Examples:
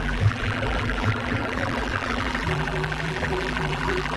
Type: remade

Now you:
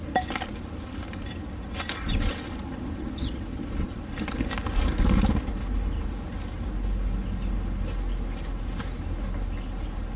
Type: recorded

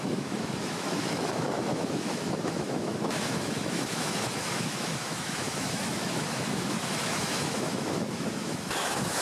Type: remade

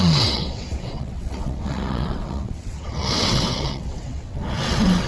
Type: remade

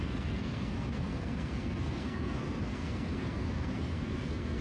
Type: remade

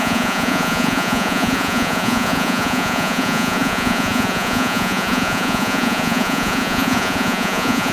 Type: remade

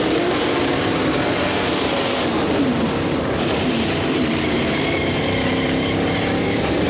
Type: remade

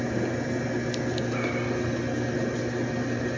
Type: recorded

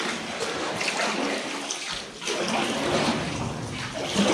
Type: recorded